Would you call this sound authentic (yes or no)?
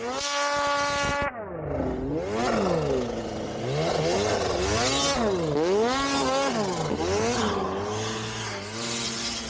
yes